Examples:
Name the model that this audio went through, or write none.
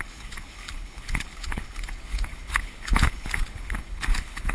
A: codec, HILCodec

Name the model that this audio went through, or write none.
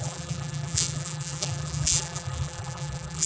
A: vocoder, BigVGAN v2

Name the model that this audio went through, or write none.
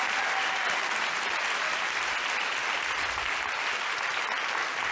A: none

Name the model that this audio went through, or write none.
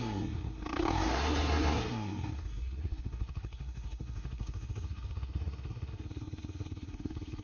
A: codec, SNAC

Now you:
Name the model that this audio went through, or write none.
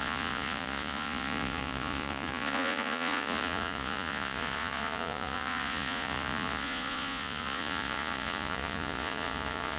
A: vocoder, Vocos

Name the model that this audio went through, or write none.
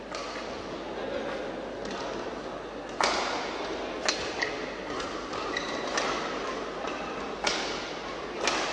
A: none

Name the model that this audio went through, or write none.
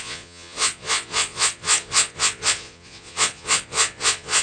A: vocoder, Vocos